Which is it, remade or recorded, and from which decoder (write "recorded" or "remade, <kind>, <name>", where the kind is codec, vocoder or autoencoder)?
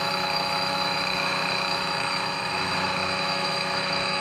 remade, autoencoder, DAC-VAE